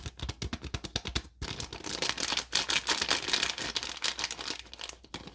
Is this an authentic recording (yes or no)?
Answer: yes